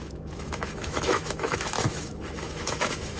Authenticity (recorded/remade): remade